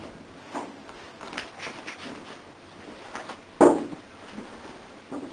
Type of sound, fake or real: real